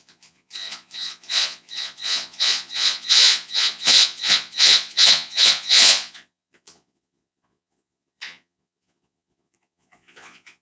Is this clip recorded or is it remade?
remade